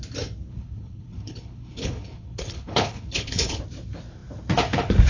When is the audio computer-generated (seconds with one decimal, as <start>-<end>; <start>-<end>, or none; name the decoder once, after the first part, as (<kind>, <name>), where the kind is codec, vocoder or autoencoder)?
0.5-3.6 (codec, HILCodec)